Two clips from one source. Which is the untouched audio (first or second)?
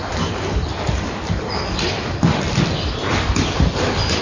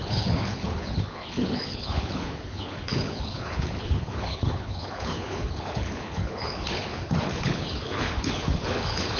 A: first